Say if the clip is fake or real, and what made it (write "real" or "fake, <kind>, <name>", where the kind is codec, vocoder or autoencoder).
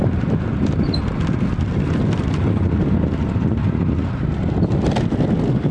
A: real